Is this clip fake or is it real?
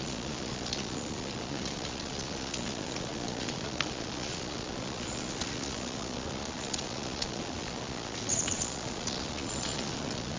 fake